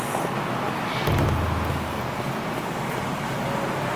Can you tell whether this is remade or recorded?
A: recorded